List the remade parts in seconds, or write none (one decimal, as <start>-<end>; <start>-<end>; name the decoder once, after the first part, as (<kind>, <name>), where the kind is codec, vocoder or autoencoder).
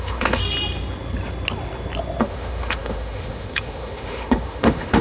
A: 0.0-0.4 (autoencoder, DAC-VAE); 2.2-5.0